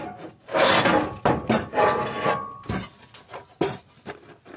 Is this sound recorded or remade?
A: recorded